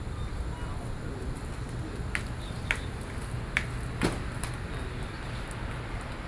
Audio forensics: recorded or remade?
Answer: recorded